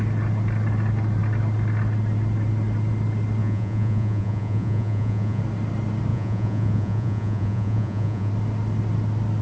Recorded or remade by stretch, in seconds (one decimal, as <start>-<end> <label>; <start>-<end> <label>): 0.0-3.4 recorded; 3.4-5.4 remade; 5.4-6.1 recorded; 6.1-8.3 remade; 8.3-9.4 recorded